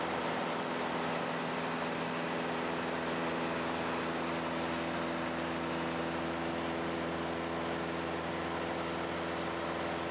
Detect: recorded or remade recorded